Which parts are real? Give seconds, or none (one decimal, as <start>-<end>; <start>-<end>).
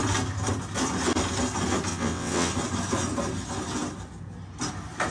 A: 0.0-1.9; 2.5-5.1